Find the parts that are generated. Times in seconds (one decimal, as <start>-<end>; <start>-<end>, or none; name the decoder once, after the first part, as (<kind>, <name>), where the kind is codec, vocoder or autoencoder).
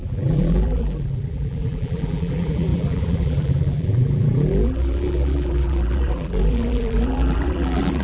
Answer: 0.0-8.0 (vocoder, BigVGAN v2)